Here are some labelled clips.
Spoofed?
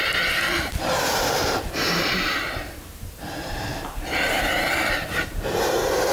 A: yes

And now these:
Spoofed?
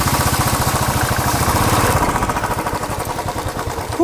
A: yes